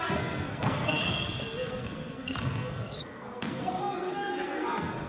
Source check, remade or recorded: remade